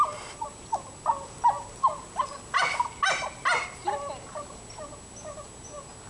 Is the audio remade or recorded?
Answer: recorded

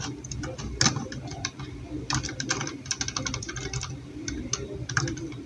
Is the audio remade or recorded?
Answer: recorded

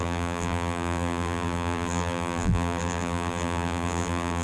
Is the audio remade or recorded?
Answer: remade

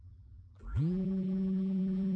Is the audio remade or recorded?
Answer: remade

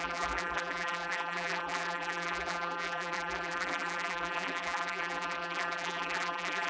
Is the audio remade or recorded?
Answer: remade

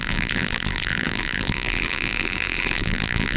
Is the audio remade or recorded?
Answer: remade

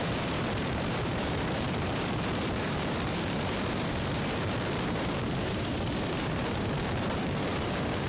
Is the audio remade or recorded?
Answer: remade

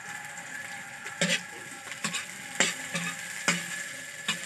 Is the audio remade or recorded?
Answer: recorded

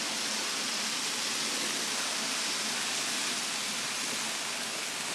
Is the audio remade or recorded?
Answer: recorded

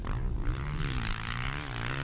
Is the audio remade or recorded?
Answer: remade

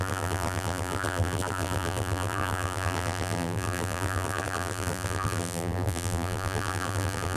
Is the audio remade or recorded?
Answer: remade